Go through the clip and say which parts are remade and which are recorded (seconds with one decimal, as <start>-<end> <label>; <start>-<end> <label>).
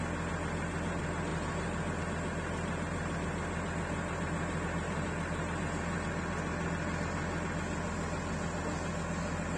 0.0-1.3 recorded; 1.3-2.0 remade; 2.0-9.6 recorded